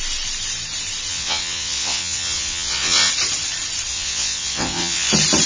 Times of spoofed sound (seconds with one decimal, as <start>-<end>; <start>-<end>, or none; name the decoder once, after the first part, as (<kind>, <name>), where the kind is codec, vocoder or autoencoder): 1.1-3.1 (vocoder, WaveNeXt); 3.9-5.1